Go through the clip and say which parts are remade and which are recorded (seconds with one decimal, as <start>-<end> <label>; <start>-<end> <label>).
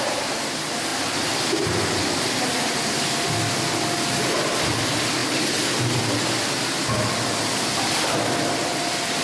0.0-9.2 recorded